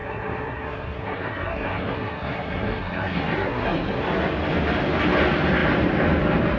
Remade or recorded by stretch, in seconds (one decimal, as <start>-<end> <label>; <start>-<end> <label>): 0.0-4.0 remade; 4.0-6.6 recorded